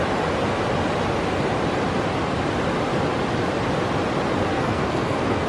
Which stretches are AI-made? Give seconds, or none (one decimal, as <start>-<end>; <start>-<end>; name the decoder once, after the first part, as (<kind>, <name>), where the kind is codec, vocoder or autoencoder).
4.5-5.5 (codec, SNAC)